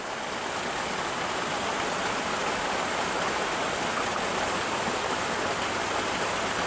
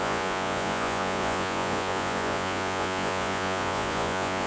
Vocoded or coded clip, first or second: second